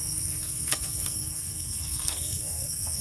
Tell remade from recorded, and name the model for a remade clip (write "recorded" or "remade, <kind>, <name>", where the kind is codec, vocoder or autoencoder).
remade, codec, SNAC